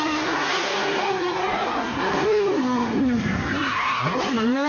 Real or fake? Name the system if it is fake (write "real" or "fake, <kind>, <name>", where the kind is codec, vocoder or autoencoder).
fake, codec, SNAC